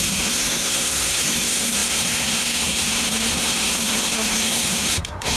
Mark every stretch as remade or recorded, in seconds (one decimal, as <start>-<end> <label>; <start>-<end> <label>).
0.0-5.4 remade